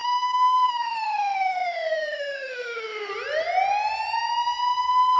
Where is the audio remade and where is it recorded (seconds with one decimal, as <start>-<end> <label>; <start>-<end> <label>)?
0.0-3.1 remade; 3.1-5.2 recorded